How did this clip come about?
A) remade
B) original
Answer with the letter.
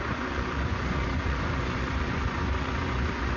A